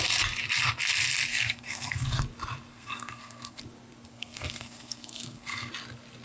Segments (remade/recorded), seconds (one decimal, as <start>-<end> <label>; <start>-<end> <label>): 0.0-1.3 recorded; 1.3-2.2 remade; 2.2-2.7 recorded; 2.7-3.6 remade; 3.6-4.1 recorded; 4.1-5.7 remade; 5.7-6.2 recorded